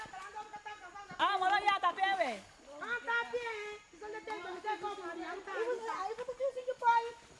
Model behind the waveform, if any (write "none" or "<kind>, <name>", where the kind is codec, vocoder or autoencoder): none